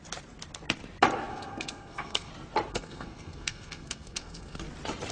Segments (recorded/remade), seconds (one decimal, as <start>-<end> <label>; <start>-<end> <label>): 0.0-1.3 recorded; 1.3-2.3 remade; 2.3-2.7 recorded; 2.7-4.6 remade; 4.6-5.1 recorded

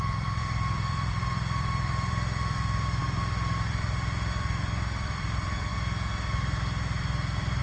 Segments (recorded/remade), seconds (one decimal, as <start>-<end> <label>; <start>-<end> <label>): 0.0-5.7 remade; 5.7-7.6 recorded